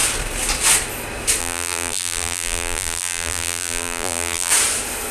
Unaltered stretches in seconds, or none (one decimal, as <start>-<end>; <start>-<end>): 0.0-1.4; 4.5-5.1